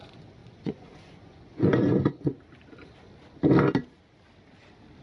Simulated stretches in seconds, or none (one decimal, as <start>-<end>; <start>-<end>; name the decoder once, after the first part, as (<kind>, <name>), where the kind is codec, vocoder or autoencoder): 0.0-2.3 (vocoder, Vocos)